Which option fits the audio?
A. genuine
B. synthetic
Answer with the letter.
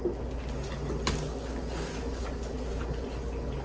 A